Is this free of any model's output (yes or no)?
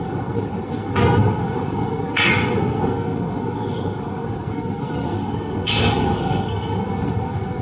no